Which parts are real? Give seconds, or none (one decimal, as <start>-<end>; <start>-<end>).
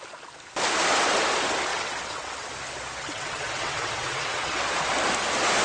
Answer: 0.0-1.7; 2.5-3.0; 4.6-5.6